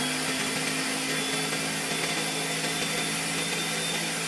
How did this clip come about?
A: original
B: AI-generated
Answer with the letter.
A